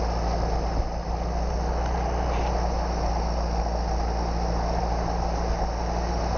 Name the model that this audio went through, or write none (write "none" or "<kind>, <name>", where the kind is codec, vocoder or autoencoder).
none